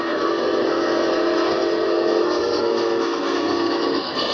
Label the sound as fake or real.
fake